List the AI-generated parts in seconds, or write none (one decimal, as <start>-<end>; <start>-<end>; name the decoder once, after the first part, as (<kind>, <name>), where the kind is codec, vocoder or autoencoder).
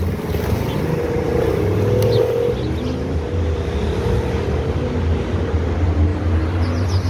none